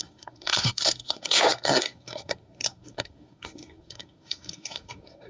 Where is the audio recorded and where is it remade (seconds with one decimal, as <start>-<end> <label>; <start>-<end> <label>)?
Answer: 0.0-5.3 remade